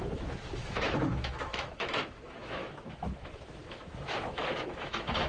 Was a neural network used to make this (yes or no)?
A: yes